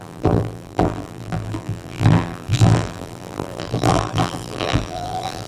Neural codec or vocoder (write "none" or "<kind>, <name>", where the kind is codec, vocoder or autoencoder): vocoder, BigVGAN v2